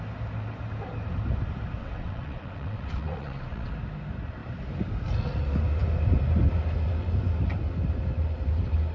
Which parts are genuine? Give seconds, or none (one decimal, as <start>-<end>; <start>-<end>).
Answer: 0.0-1.8; 3.7-8.9